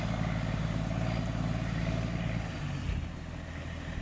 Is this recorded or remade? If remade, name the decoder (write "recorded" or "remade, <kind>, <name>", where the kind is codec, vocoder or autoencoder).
recorded